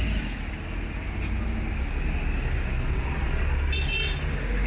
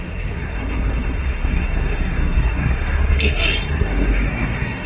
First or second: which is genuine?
first